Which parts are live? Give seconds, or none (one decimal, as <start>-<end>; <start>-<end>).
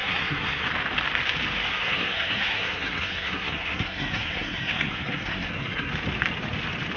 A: 0.7-1.7; 5.9-7.0